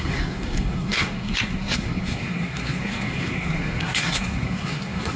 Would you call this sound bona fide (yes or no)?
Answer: no